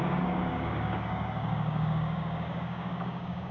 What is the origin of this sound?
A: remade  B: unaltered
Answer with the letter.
A